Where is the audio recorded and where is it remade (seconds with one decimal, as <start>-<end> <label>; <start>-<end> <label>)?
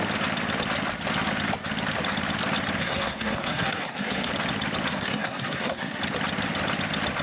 0.0-2.8 recorded; 2.8-4.3 remade; 4.3-4.9 recorded; 4.9-6.0 remade; 6.0-7.2 recorded